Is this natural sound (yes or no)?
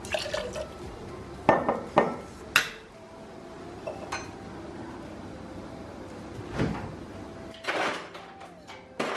yes